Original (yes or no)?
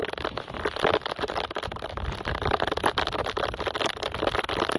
yes